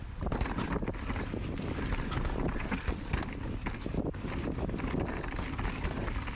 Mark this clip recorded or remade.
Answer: recorded